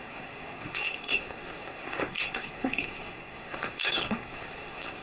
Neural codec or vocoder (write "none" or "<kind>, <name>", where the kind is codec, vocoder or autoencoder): codec, SNAC